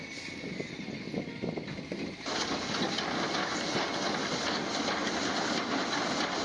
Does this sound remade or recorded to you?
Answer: recorded